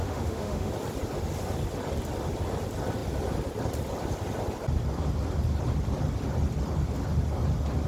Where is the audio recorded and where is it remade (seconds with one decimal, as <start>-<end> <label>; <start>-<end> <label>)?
0.0-0.7 remade; 0.7-7.9 recorded